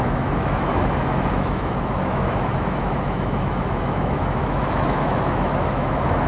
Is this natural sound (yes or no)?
no